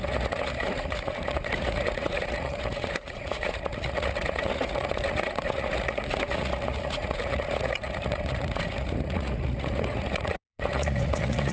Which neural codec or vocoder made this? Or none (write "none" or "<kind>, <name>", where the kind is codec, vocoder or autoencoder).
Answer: vocoder, Vocos